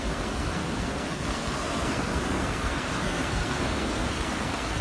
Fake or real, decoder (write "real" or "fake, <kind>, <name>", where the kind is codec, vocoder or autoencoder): fake, codec, SNAC